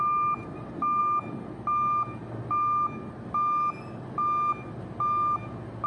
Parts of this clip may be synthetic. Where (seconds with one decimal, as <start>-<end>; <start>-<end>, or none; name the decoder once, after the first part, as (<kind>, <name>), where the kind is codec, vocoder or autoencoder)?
none